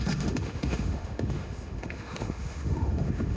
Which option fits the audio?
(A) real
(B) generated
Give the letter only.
B